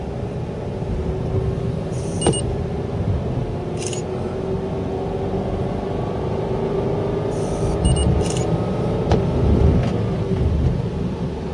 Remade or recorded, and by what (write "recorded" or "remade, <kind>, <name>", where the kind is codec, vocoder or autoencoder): recorded